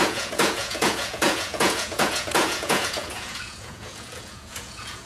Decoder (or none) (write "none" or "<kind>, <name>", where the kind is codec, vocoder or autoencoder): vocoder, Vocos